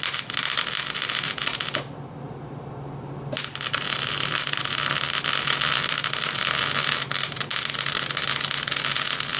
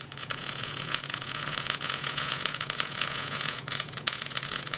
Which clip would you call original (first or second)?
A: first